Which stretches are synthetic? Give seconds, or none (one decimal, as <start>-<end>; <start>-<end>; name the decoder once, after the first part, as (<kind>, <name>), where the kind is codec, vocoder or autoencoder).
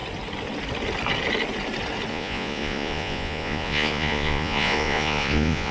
2.1-5.7 (vocoder, Vocos)